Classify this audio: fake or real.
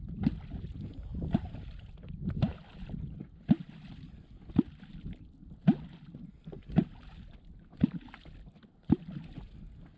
real